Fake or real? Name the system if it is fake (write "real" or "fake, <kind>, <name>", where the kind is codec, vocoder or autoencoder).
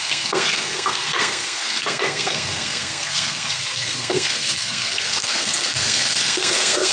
fake, codec, SNAC